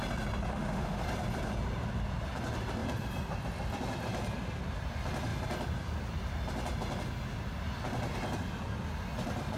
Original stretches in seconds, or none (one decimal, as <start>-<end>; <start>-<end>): 0.0-0.5; 1.0-9.6